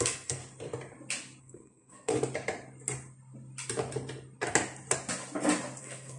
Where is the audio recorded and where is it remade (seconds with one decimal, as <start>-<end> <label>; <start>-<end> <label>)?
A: 0.0-0.4 remade; 0.4-1.4 recorded; 1.4-2.1 remade; 2.1-5.8 recorded; 5.8-6.2 remade

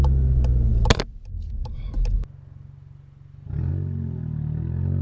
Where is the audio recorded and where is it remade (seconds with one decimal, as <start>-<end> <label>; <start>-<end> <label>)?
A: 0.0-5.0 recorded